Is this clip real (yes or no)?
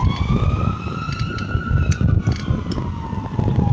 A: yes